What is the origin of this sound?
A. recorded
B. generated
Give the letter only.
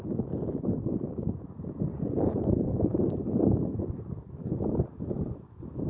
A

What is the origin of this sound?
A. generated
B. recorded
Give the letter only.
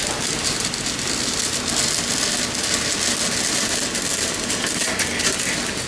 B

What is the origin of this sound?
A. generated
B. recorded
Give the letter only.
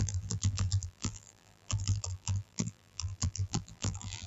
A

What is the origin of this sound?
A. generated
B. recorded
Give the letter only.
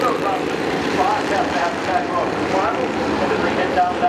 A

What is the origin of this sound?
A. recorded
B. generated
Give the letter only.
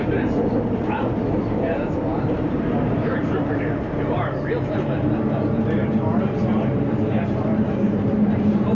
B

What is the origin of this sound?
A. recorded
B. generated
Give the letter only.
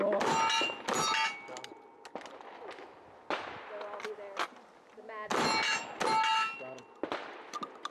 A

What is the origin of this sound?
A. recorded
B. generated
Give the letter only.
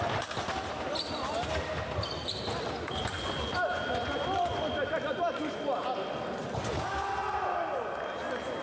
A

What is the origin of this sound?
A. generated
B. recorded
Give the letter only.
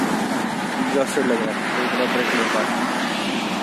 B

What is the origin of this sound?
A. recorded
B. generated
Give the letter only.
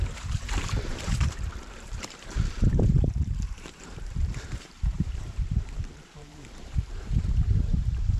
B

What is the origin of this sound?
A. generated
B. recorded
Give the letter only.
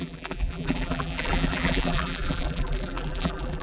A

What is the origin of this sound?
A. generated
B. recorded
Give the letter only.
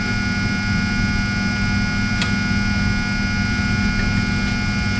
B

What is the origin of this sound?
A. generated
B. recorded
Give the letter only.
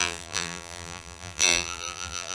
A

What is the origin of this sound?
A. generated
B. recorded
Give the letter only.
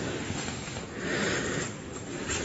A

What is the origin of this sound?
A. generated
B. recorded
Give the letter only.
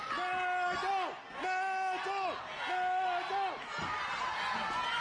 B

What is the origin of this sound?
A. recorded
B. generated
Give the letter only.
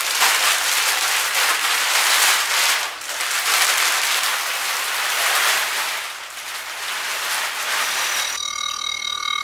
B